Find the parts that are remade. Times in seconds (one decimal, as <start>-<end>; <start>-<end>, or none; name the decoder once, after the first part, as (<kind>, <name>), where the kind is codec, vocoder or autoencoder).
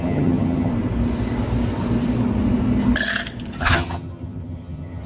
0.0-0.7 (vocoder, HiFi-GAN); 3.6-5.1